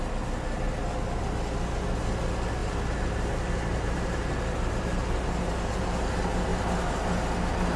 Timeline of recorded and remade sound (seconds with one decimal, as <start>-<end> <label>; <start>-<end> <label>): 0.0-2.6 recorded; 2.6-6.1 remade; 6.1-6.5 recorded; 6.5-7.2 remade; 7.2-7.8 recorded